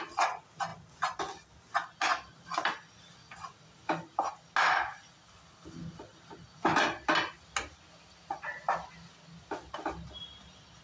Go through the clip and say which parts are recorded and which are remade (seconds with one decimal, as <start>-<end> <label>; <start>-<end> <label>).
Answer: 0.0-10.8 recorded